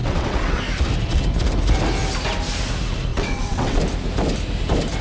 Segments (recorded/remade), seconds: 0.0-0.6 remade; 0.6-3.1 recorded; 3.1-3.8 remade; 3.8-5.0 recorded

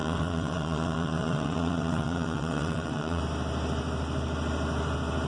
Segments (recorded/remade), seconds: 0.0-3.2 remade; 3.2-5.3 recorded

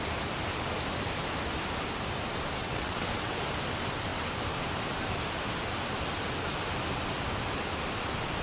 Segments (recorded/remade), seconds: 0.0-2.6 recorded; 2.6-3.4 remade; 3.4-8.4 recorded

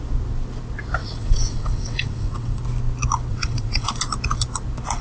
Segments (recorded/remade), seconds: 0.0-1.0 recorded; 1.0-2.6 remade; 2.6-3.3 recorded; 3.3-3.9 remade; 3.9-5.0 recorded

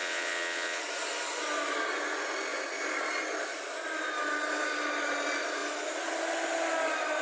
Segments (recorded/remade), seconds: 0.0-0.8 remade; 0.8-7.2 recorded

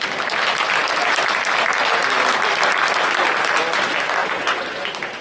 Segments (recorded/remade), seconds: 0.0-4.2 recorded; 4.2-4.8 remade; 4.8-5.2 recorded